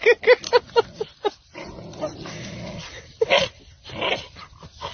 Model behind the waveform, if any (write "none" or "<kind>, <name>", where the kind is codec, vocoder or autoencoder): none